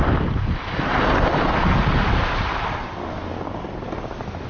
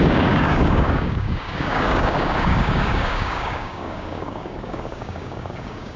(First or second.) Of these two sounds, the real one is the first